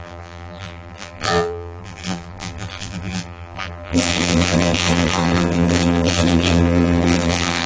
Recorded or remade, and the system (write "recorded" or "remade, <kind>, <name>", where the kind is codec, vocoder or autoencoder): remade, vocoder, BigVGAN v2